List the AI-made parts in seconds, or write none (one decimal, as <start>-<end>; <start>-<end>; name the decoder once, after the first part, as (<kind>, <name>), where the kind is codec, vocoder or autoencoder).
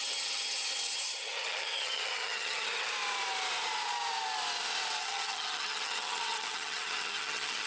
0.0-2.9 (vocoder, HiFi-GAN); 5.0-7.7